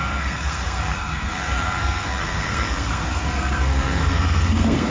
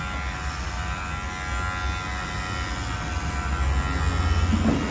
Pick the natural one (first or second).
second